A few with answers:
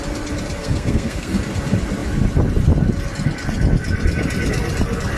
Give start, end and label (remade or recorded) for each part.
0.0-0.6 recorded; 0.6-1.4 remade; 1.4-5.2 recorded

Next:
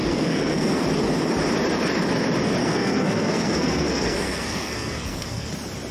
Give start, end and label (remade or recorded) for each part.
0.0-0.8 remade; 0.8-2.6 recorded; 2.6-5.5 remade; 5.5-5.9 recorded